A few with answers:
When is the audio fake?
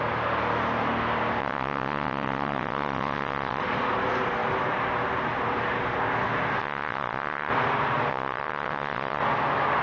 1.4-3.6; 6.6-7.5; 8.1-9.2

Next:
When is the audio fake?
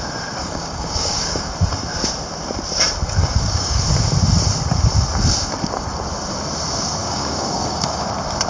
0.4-1.5; 3.2-3.8; 7.0-8.1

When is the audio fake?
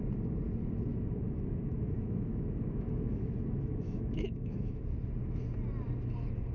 0.9-4.8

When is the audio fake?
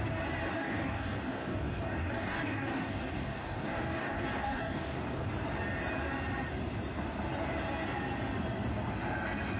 0.5-5.3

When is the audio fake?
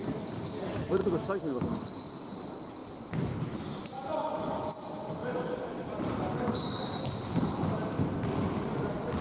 2.8-3.3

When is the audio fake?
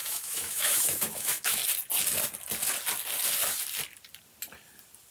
0.0-1.6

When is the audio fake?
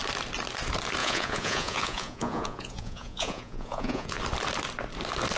1.0-4.2